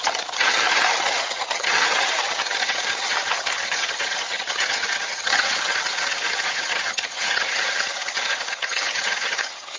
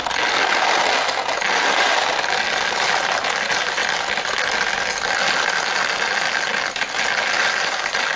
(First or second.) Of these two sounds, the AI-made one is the first